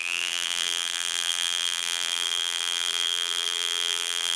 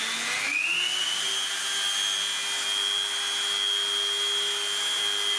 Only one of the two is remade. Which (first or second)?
first